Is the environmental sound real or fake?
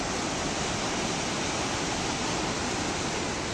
real